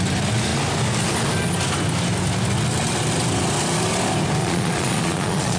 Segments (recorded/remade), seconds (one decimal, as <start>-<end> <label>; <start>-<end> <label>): 0.0-4.4 recorded; 4.4-5.6 remade